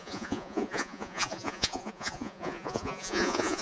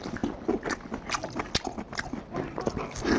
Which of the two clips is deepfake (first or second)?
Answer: first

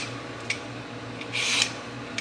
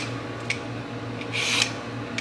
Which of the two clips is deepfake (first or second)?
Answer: first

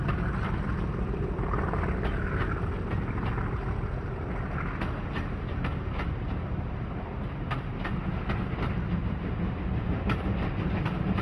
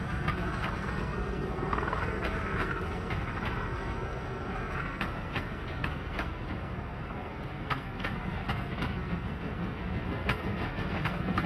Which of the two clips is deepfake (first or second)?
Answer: second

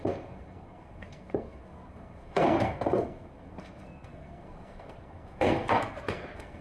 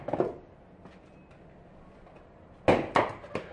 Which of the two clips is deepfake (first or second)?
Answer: first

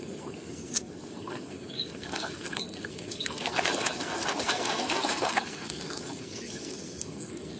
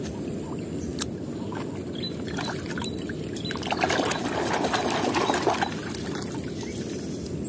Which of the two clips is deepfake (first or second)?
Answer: first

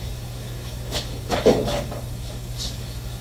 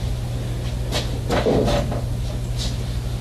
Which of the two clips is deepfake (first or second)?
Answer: first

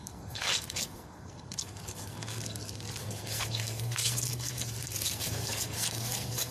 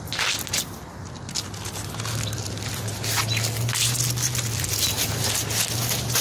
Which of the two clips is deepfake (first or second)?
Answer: first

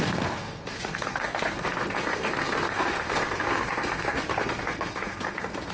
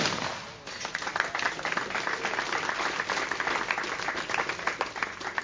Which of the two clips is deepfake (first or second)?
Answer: first